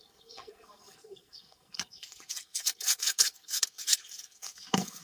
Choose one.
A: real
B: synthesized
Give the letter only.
B